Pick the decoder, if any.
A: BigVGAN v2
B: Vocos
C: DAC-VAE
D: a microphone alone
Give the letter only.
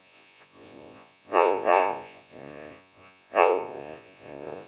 B